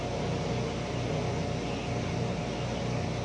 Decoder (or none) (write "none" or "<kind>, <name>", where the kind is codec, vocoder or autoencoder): none